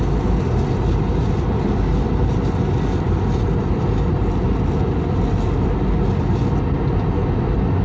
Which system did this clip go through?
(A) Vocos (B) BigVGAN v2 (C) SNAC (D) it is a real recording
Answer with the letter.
D